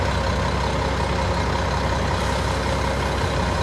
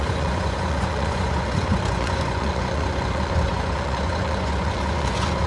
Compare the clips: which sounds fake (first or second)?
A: second